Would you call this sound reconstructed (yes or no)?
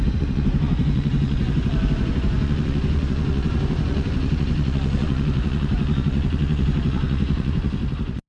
yes